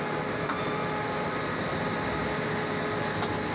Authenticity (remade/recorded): recorded